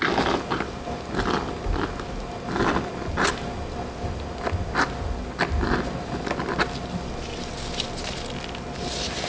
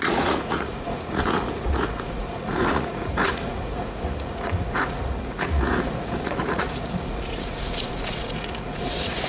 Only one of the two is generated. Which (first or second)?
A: second